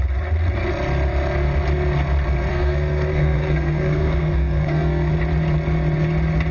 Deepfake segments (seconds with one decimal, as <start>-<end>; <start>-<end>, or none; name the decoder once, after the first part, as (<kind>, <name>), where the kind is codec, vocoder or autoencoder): 2.5-5.1 (codec, SNAC)